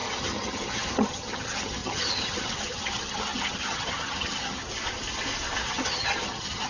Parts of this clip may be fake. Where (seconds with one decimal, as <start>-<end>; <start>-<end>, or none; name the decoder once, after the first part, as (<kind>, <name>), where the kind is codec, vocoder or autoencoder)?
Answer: 0.0-4.6 (vocoder, HiFi-GAN); 5.7-6.7